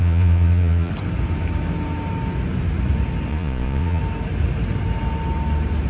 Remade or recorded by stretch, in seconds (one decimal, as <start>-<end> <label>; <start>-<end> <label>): 0.0-0.9 remade; 0.9-3.3 recorded; 3.3-4.0 remade; 4.0-5.9 recorded

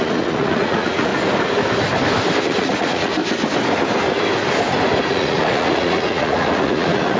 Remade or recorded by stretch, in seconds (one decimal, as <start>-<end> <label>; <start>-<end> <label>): 0.0-1.1 remade; 1.1-2.4 recorded; 2.4-3.2 remade; 3.2-5.1 recorded; 5.1-7.2 remade

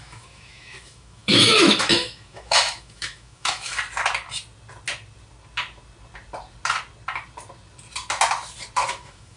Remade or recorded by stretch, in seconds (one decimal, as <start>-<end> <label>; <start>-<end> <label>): 0.0-3.7 remade; 3.7-8.9 recorded; 8.9-9.4 remade